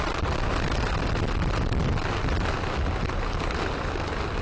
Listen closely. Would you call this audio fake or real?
real